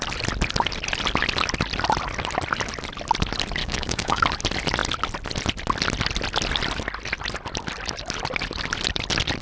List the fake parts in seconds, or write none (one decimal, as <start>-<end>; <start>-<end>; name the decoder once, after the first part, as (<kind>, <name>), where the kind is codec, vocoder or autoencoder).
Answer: 3.6-4.2 (codec, DAC)